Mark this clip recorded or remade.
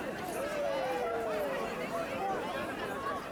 remade